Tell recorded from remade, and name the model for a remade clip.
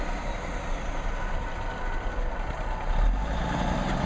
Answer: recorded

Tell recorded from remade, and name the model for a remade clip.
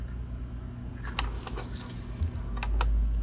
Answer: recorded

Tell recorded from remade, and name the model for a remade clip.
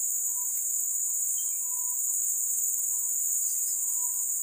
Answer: recorded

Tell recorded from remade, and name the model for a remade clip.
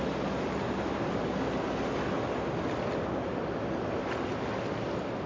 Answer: recorded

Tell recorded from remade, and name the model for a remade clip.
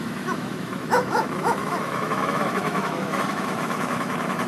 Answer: remade, autoencoder, DAC-VAE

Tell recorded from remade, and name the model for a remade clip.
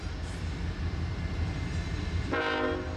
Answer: recorded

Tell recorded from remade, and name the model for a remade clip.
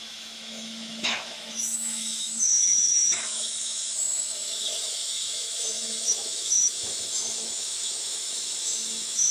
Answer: remade, autoencoder, DAC-VAE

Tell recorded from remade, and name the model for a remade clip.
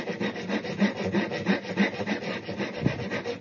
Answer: recorded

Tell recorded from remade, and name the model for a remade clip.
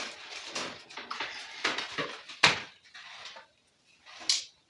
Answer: recorded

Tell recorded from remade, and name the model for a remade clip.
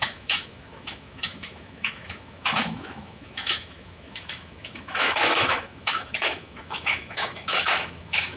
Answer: remade, autoencoder, DAC-VAE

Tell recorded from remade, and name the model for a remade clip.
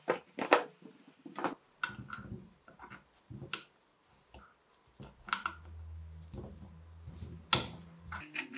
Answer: recorded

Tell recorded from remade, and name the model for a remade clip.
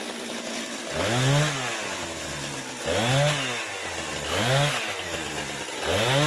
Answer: recorded